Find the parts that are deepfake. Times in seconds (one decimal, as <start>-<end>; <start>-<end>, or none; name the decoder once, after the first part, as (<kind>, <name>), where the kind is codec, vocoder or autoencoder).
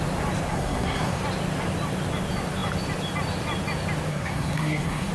0.5-1.2 (codec, SNAC); 4.1-5.1